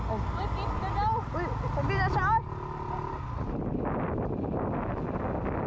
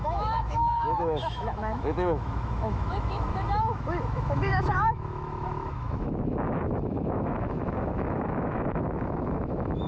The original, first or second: first